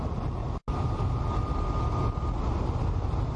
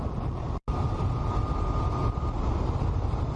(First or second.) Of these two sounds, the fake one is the second